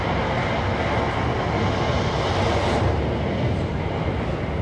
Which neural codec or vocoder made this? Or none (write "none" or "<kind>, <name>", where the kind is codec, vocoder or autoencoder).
none